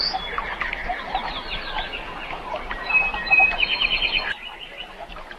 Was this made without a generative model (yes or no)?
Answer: yes